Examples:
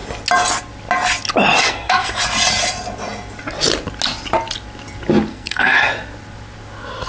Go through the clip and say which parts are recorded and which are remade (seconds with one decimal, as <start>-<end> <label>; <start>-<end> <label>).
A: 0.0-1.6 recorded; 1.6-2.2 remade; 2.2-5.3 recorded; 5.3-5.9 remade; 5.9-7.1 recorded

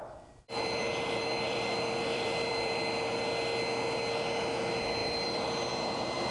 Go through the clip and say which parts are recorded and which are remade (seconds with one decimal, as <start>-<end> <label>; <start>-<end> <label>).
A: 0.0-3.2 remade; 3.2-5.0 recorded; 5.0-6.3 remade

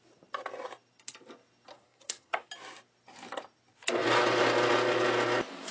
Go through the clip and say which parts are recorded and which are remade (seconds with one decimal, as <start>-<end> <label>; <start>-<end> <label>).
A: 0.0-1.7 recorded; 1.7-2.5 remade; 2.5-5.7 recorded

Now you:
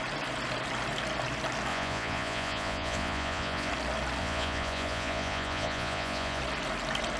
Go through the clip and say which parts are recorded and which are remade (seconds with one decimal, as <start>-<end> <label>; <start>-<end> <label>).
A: 0.0-1.7 recorded; 1.7-3.7 remade; 3.7-4.2 recorded; 4.2-6.4 remade; 6.4-7.2 recorded

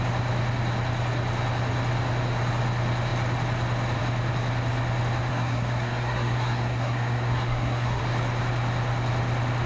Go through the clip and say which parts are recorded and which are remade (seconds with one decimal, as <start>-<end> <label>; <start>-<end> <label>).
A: 0.0-5.3 recorded; 5.3-8.0 remade; 8.0-9.7 recorded

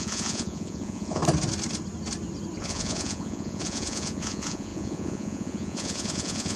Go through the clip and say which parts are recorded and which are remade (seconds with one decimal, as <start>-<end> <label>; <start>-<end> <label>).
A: 0.0-1.2 remade; 1.2-2.6 recorded; 2.6-6.6 remade